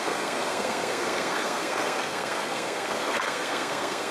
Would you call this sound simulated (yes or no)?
yes